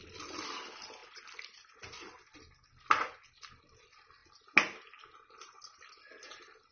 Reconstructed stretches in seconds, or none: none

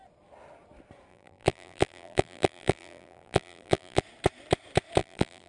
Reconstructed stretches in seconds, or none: 1.1-4.0 (vocoder, BigVGAN v2); 5.0-5.5

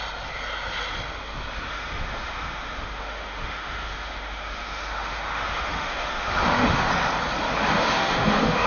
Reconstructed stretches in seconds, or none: 1.7-6.9 (autoencoder, DAC-VAE); 7.7-8.7

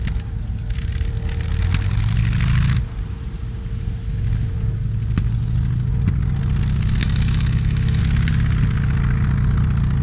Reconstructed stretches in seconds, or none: 7.0-8.0 (autoencoder, DAC-VAE)